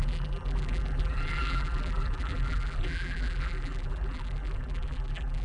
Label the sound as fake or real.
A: fake